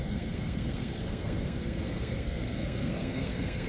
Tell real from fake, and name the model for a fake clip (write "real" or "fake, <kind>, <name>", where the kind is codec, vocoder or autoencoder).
fake, codec, SNAC